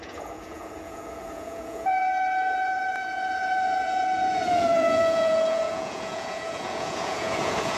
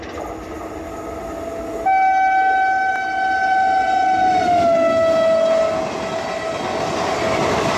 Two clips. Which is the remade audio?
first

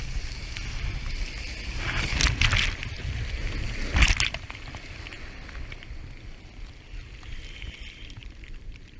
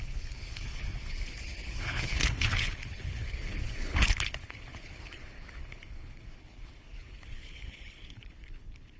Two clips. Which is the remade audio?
second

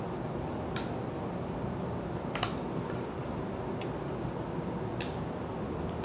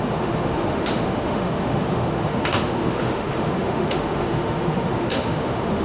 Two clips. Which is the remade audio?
second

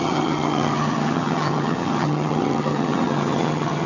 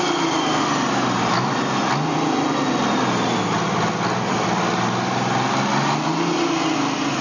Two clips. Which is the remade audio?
first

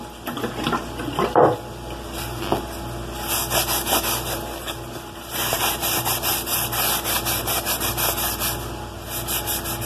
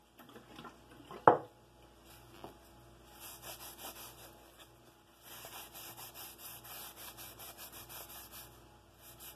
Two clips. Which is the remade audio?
first